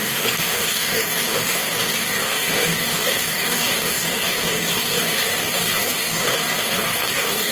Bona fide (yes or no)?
no